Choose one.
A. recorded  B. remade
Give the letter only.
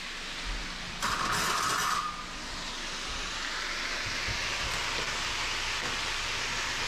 A